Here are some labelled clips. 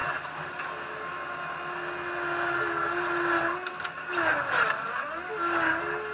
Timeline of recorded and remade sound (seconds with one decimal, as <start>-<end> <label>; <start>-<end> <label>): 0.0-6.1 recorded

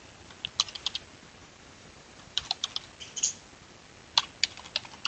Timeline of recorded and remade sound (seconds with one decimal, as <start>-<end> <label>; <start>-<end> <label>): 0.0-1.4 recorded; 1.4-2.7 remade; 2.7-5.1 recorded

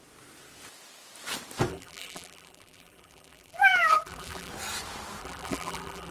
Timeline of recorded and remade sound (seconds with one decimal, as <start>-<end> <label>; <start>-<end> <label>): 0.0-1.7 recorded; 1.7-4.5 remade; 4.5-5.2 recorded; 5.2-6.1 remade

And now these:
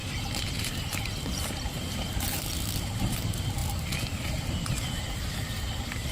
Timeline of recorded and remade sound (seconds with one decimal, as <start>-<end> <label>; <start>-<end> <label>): 0.0-1.4 recorded; 1.4-6.1 remade